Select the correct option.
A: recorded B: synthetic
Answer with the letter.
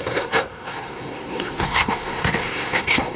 B